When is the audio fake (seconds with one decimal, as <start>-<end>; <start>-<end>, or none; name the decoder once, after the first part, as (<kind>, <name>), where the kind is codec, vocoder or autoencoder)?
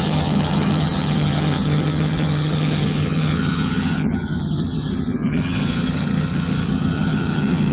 0.0-7.7 (vocoder, HiFi-GAN)